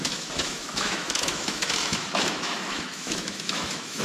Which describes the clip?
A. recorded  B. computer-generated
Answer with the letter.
B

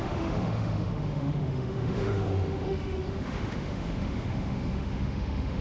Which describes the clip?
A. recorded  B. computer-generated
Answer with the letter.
B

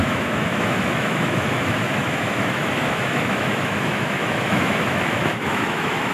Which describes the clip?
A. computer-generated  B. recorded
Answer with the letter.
A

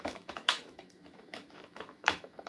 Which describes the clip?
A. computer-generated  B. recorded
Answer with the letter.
A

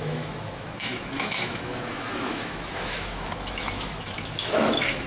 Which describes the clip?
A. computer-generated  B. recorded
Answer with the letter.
A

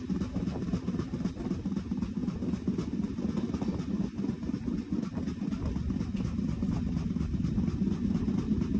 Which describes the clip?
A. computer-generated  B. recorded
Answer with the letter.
B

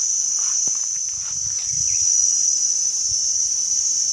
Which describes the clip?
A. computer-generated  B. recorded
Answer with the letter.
B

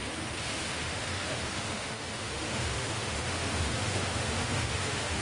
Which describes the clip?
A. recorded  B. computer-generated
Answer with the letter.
B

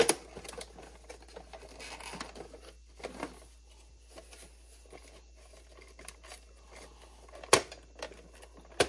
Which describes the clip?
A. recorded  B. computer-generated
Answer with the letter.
A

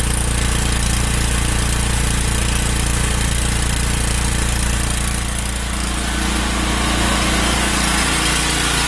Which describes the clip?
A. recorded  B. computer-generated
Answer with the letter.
A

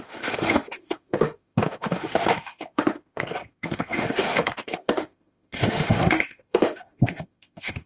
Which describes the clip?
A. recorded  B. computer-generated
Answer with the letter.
B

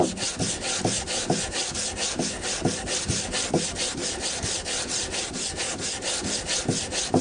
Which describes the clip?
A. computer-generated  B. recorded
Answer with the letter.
B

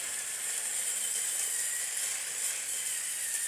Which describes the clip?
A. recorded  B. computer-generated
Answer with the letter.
A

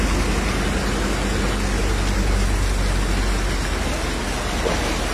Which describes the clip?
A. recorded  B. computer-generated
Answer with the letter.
A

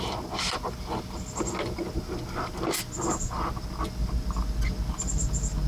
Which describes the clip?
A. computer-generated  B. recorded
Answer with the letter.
B